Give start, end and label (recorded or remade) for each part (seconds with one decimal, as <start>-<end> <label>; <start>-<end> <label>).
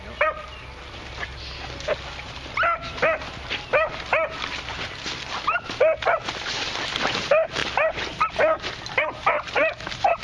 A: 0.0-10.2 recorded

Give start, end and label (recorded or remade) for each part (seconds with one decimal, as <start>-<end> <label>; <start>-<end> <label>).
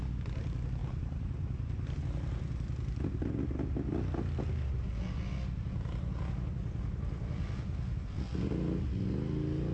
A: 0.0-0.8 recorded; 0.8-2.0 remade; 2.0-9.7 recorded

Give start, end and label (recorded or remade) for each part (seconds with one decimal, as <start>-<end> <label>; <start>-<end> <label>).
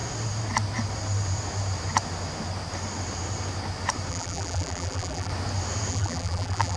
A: 0.0-4.1 recorded; 4.1-5.3 remade; 5.3-5.9 recorded; 5.9-6.8 remade